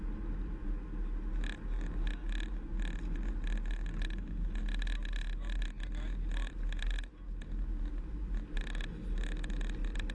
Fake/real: real